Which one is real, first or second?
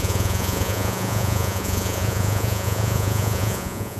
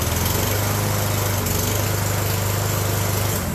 second